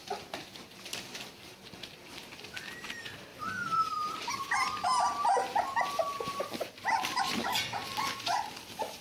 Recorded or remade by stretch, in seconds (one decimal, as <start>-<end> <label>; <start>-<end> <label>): 0.0-1.5 remade; 1.5-3.3 recorded; 3.3-4.3 remade; 4.3-9.0 recorded